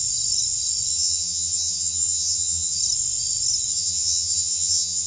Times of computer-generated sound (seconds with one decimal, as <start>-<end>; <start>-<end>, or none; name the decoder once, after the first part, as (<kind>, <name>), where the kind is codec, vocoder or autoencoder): 0.9-2.8 (vocoder, HiFi-GAN); 3.7-5.1